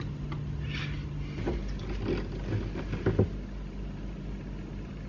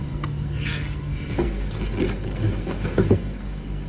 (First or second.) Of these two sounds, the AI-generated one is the second